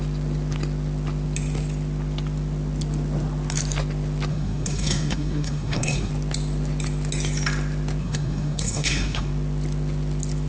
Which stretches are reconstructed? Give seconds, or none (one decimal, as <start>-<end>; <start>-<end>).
4.3-6.1; 8.0-9.3